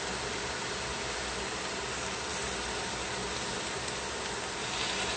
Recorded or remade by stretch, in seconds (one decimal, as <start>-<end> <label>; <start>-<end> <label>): 0.0-5.2 recorded